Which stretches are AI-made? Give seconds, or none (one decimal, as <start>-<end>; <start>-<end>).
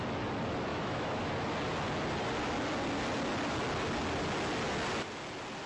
0.7-1.2